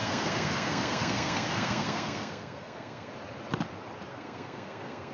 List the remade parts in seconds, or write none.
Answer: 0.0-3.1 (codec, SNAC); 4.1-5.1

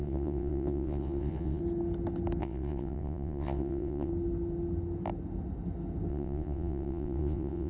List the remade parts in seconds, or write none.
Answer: 0.0-1.6 (vocoder, WaveNeXt); 2.4-4.1; 6.1-7.7

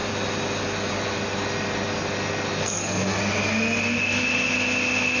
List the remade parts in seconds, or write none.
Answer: 2.6-3.2 (codec, SNAC)